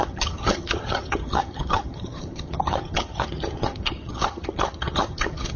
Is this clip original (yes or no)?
no